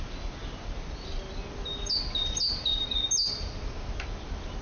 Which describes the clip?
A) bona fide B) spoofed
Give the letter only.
A